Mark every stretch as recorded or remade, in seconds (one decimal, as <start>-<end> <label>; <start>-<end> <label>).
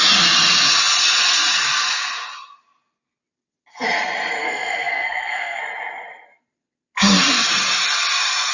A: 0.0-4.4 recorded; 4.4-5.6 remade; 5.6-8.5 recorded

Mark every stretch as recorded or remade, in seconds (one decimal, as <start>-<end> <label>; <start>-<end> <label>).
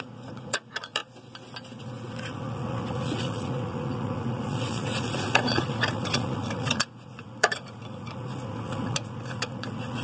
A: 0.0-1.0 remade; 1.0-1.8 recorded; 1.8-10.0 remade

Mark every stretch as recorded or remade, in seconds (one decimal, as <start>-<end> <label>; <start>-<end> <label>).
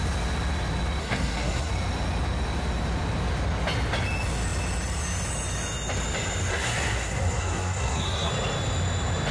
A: 0.0-1.0 recorded; 1.0-1.7 remade; 1.7-6.5 recorded; 6.5-8.3 remade; 8.3-9.3 recorded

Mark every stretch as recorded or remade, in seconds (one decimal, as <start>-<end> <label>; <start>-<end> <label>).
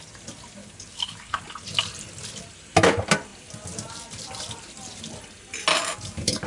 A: 0.0-0.6 recorded; 0.6-1.4 remade; 1.4-5.7 recorded; 5.7-6.5 remade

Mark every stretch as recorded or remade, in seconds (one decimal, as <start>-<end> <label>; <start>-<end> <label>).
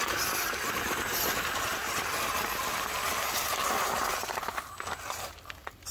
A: 0.0-5.9 recorded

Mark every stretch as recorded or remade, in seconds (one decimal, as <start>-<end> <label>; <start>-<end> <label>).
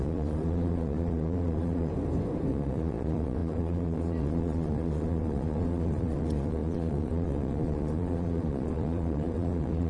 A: 0.0-1.9 remade; 1.9-2.5 recorded; 2.5-9.9 remade